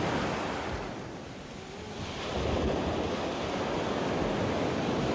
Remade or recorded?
recorded